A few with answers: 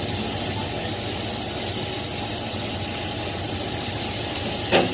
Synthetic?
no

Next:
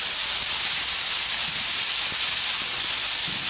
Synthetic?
no